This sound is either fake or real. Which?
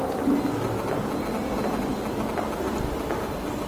real